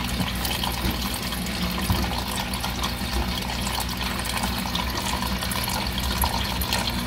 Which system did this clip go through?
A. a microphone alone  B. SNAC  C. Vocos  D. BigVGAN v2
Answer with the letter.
A